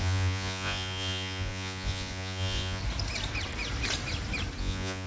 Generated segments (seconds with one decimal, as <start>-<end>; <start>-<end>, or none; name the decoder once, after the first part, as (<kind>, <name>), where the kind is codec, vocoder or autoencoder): 0.0-2.8 (vocoder, Vocos); 4.6-5.1